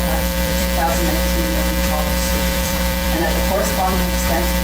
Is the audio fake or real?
fake